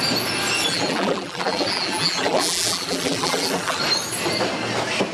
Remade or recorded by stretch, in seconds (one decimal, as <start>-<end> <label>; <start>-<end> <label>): 0.0-0.7 recorded; 0.7-3.8 remade; 3.8-5.1 recorded